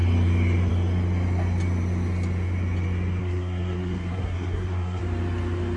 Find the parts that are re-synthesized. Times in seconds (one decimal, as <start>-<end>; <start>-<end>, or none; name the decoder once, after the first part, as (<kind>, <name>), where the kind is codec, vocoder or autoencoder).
3.2-5.0 (codec, SNAC)